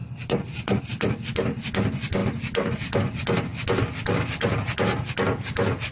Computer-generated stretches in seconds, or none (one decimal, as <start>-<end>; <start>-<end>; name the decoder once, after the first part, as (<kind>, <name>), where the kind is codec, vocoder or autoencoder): none